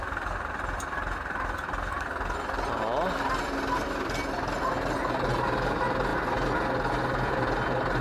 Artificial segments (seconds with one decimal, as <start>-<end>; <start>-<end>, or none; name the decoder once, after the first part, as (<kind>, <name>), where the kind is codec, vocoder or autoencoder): none